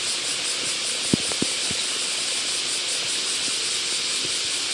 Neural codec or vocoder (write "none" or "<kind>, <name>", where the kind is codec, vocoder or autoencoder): none